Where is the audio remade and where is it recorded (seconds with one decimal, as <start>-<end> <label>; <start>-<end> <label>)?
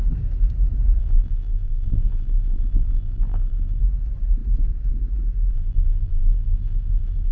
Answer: 0.0-1.0 recorded; 1.0-3.8 remade; 3.8-5.5 recorded; 5.5-7.3 remade